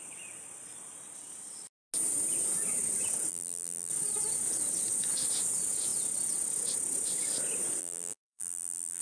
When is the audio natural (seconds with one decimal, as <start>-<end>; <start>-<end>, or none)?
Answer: 0.0-3.3; 3.9-7.8